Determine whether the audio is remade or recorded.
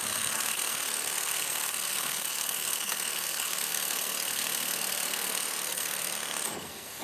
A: remade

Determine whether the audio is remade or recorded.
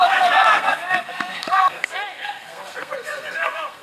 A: remade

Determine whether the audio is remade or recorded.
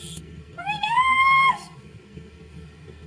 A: remade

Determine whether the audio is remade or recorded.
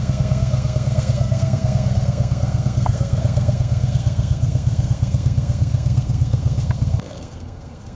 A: remade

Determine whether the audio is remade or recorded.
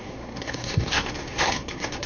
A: remade